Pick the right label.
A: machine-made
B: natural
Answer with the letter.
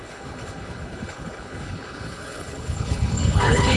A